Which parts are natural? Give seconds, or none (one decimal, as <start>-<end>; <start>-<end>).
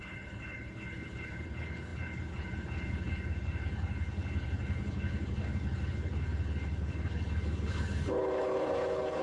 none